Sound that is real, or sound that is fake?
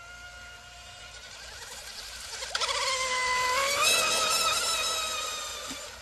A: real